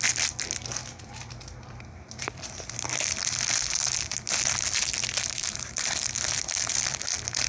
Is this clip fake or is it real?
fake